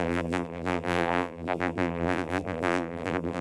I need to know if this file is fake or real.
fake